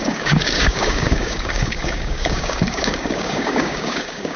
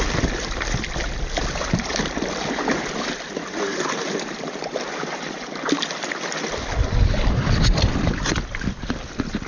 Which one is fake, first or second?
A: first